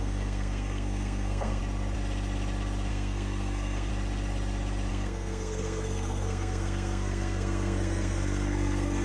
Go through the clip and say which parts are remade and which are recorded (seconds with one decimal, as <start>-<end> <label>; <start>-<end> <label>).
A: 0.0-1.6 remade; 1.6-2.9 recorded; 2.9-3.9 remade; 3.9-4.9 recorded; 4.9-9.0 remade